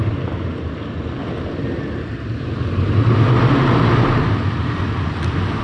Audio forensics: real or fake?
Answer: real